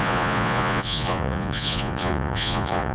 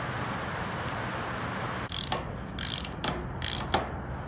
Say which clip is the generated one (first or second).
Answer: first